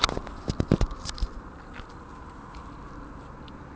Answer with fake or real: real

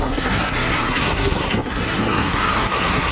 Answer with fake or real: fake